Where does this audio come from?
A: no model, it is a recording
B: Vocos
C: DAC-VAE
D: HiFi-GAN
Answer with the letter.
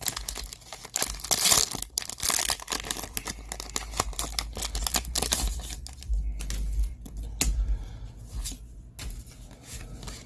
A